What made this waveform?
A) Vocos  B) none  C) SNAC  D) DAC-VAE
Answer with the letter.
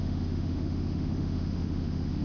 D